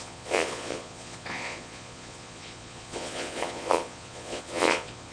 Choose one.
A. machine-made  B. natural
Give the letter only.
A